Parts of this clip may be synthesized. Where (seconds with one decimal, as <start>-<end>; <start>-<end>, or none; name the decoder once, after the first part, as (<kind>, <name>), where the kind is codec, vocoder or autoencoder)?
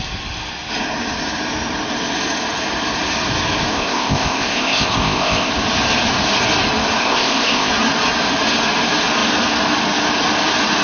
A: 3.7-5.5 (codec, ZipCodec); 7.0-7.7